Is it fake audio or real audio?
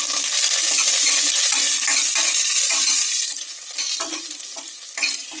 real